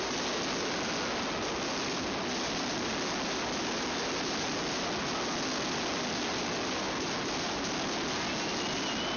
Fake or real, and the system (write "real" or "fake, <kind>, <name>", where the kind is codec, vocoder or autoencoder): real